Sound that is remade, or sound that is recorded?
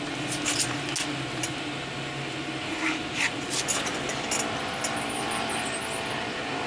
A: recorded